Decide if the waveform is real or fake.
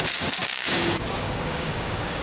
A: fake